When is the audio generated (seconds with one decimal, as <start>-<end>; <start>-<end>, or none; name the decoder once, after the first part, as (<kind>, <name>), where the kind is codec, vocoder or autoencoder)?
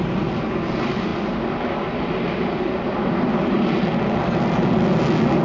0.0-1.1 (vocoder, BigVGAN v2); 3.2-3.9